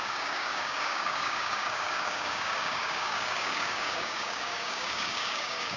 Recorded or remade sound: remade